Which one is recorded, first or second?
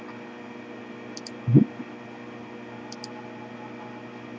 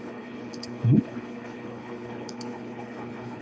first